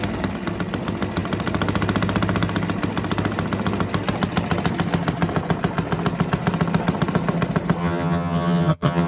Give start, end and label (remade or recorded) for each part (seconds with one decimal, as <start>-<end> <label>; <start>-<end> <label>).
0.0-7.8 recorded; 7.8-9.1 remade